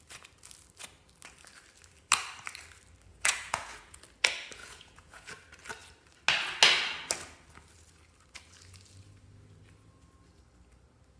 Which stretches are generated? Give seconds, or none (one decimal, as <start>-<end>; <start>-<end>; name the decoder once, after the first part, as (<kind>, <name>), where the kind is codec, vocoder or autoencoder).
3.1-4.0 (vocoder, Vocos); 4.6-5.3